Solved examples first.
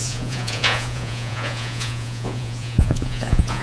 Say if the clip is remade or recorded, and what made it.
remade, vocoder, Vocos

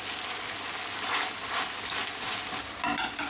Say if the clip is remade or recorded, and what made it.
recorded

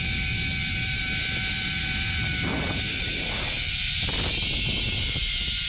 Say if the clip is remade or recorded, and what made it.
recorded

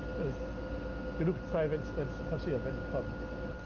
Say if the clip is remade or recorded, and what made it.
recorded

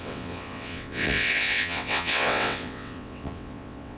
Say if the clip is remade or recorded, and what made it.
remade, vocoder, WaveNeXt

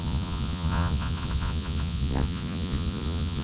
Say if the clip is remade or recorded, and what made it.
remade, vocoder, Vocos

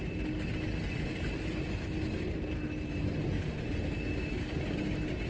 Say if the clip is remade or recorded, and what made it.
recorded